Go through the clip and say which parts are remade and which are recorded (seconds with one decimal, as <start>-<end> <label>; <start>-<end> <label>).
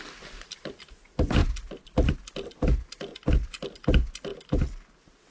0.0-5.3 recorded